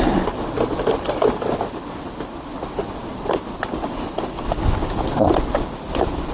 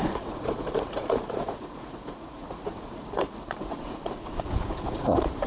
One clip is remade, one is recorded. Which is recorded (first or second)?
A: first